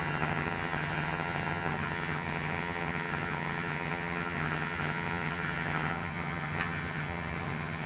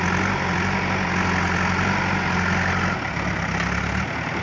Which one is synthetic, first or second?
first